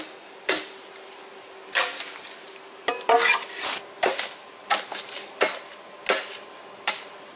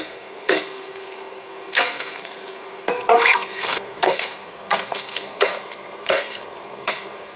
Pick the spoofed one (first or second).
second